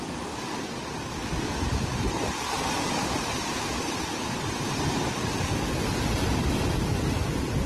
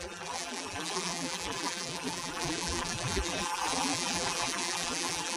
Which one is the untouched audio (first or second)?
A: first